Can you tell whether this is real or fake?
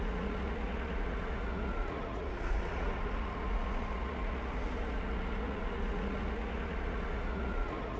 fake